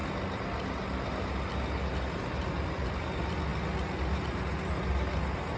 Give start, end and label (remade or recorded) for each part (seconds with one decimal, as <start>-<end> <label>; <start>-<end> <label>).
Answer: 0.0-5.6 recorded